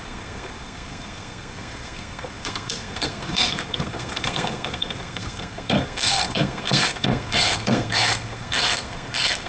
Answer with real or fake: fake